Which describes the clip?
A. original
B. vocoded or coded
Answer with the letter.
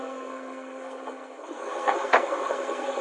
B